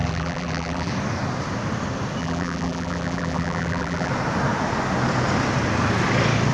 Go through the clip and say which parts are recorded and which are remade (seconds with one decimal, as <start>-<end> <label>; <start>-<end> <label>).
0.0-0.9 remade; 0.9-2.2 recorded; 2.2-4.1 remade; 4.1-6.5 recorded